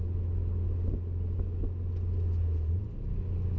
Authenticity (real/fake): real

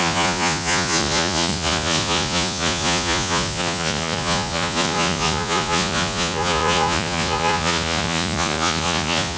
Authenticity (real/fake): fake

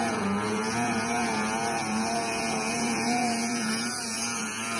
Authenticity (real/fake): fake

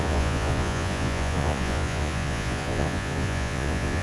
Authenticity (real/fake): fake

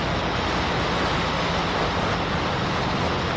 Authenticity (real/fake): real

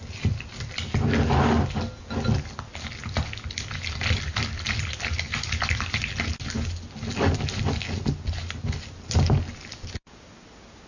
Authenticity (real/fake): real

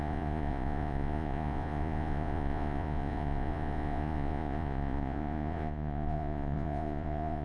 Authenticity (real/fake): fake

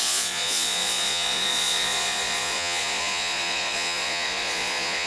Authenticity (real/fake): fake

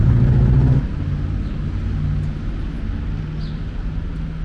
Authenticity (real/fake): real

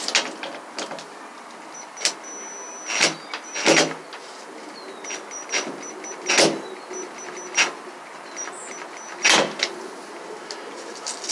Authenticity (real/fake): real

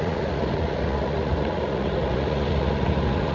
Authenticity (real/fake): fake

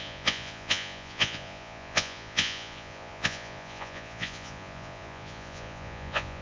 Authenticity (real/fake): fake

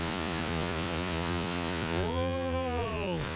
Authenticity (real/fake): fake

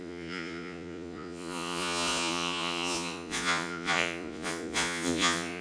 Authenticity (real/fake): fake